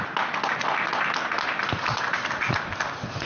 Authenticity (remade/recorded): recorded